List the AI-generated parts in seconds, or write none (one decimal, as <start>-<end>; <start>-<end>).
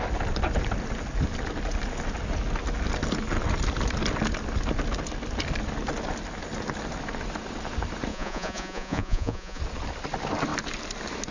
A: 8.1-9.6